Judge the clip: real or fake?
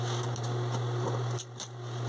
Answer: real